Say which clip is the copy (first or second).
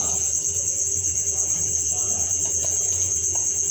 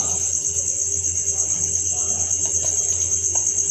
first